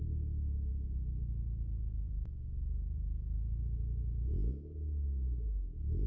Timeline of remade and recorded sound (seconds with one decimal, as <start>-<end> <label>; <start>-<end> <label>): 0.0-4.4 recorded; 4.4-6.1 remade